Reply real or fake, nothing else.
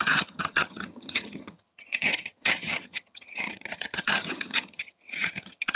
fake